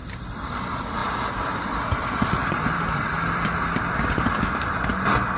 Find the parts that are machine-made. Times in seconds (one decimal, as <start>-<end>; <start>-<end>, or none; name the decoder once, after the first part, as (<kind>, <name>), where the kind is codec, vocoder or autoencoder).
0.0-0.6 (vocoder, BigVGAN v2); 1.0-4.2